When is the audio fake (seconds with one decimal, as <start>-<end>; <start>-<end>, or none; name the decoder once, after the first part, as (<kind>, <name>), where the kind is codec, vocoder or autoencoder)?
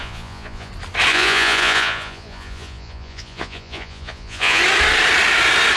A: 0.0-0.7 (vocoder, Vocos); 1.1-4.6